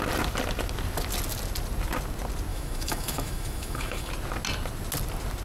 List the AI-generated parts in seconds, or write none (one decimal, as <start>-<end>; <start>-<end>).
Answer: 2.5-4.1